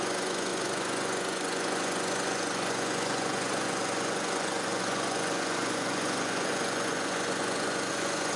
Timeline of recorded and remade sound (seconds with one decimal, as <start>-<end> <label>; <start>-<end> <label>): 0.0-8.4 remade